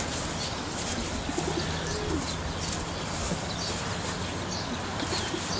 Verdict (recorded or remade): recorded